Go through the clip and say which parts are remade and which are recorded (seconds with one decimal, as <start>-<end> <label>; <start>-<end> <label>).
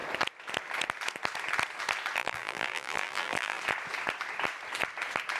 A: 0.0-2.2 recorded; 2.2-3.6 remade; 3.6-5.4 recorded